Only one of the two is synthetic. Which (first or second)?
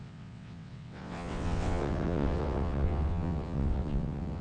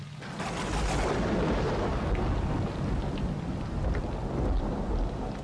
first